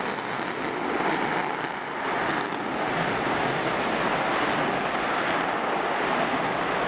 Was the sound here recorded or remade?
recorded